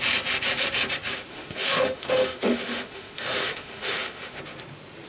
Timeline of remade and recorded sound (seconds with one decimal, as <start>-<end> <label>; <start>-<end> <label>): 0.0-1.3 recorded; 1.3-4.4 remade; 4.4-5.1 recorded